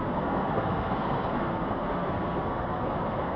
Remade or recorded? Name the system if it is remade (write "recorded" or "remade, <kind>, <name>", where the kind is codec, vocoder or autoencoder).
remade, codec, SNAC